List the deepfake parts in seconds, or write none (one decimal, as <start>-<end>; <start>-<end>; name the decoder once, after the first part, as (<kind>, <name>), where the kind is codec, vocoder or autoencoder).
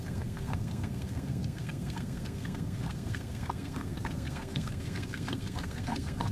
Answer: 0.0-6.3 (codec, SNAC)